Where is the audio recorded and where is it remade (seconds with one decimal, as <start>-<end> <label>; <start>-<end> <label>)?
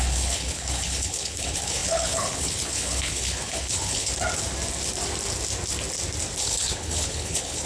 0.0-4.1 remade; 4.1-6.4 recorded; 6.4-7.7 remade